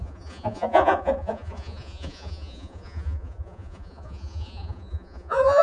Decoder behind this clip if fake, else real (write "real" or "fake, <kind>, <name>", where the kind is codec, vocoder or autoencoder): fake, vocoder, Vocos